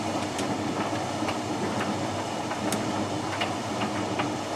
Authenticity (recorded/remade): recorded